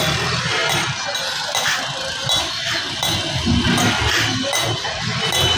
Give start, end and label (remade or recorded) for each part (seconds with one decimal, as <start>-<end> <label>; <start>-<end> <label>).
0.0-5.6 recorded